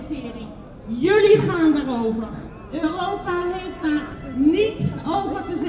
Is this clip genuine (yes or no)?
yes